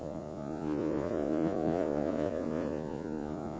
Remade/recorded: remade